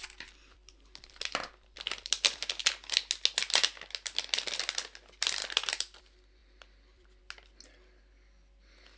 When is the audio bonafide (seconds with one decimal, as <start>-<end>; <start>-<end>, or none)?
2.6-5.4; 6.0-6.4; 7.2-9.0